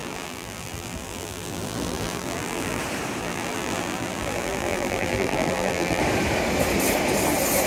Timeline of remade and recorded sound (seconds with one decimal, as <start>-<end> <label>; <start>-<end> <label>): 0.0-2.8 remade; 2.8-3.2 recorded; 3.2-6.0 remade; 6.0-7.7 recorded

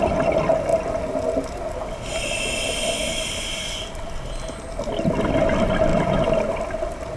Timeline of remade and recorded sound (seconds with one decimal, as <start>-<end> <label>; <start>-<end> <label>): 0.0-5.9 recorded; 5.9-6.4 remade; 6.4-7.2 recorded

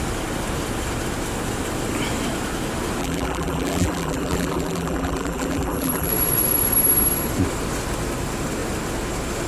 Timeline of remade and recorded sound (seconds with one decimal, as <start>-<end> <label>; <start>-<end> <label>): 0.0-3.0 recorded; 3.0-6.1 remade; 6.1-9.5 recorded

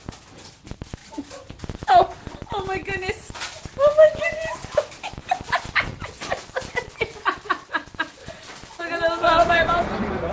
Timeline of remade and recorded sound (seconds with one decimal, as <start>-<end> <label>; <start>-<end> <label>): 0.0-1.0 recorded; 1.0-1.5 remade; 1.5-8.2 recorded; 8.2-8.8 remade; 8.8-9.4 recorded; 9.4-10.3 remade

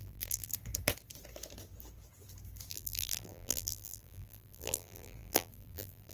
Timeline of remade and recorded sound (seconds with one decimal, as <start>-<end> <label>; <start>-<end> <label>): 0.0-0.5 remade; 0.5-2.7 recorded; 2.7-6.1 remade

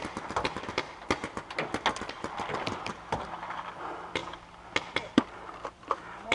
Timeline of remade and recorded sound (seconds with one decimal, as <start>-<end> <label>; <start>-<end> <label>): 0.0-1.0 remade; 1.0-2.9 recorded; 2.9-4.2 remade; 4.2-5.0 recorded; 5.0-6.3 remade

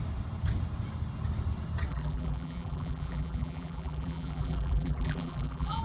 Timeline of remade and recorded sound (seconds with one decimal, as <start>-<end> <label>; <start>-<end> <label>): 0.0-1.9 recorded; 1.9-5.8 remade